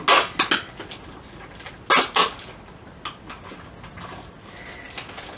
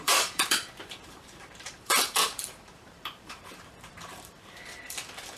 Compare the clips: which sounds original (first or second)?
first